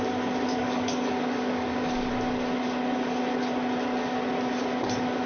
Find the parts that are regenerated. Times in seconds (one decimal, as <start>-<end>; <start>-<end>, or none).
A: 0.5-2.1